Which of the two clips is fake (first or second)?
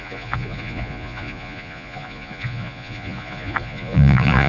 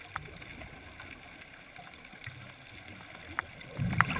first